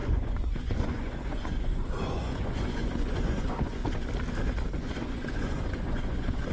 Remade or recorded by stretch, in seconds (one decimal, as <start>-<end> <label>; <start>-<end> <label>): 0.0-3.8 remade; 3.8-4.8 recorded; 4.8-6.5 remade